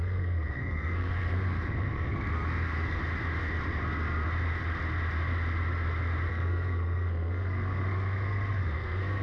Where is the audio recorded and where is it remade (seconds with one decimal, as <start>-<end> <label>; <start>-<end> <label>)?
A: 0.0-3.0 remade; 3.0-6.3 recorded; 6.3-9.2 remade